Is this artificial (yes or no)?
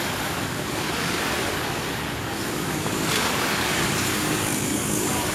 yes